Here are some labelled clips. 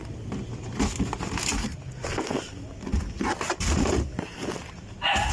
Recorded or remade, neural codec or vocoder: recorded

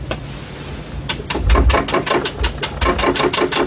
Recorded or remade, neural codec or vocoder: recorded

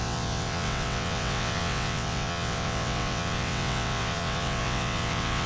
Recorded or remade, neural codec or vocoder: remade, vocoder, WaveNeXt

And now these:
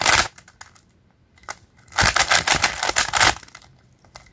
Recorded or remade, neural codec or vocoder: recorded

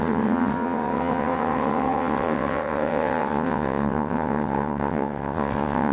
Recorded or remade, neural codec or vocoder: remade, vocoder, WaveNeXt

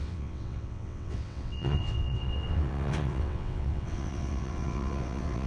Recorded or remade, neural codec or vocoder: remade, vocoder, WaveNeXt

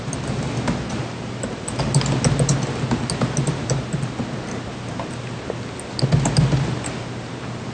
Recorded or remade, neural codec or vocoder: recorded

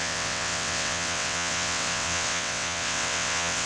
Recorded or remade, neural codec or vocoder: remade, vocoder, WaveNeXt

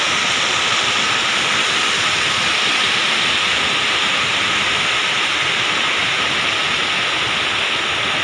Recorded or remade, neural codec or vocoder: recorded